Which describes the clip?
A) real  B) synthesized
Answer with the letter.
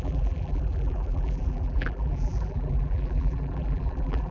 B